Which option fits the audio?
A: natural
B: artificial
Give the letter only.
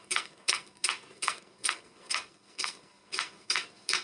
B